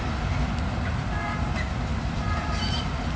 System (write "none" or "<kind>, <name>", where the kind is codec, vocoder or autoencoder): vocoder, BigVGAN v2